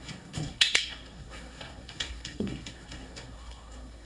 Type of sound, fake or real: fake